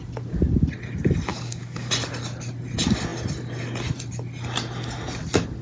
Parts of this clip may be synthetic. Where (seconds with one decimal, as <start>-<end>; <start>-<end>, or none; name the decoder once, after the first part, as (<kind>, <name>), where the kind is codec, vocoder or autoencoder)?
1.3-1.9 (codec, DAC)